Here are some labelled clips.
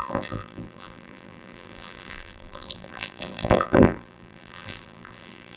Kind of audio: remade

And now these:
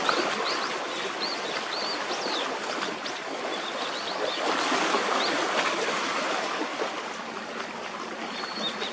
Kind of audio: recorded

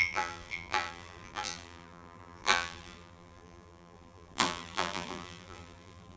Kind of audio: remade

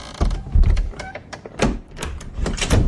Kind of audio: remade